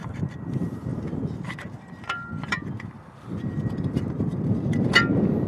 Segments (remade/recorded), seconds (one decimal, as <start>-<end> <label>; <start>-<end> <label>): 0.0-5.5 remade